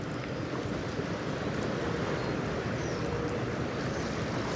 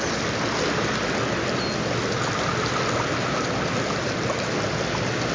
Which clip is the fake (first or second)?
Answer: first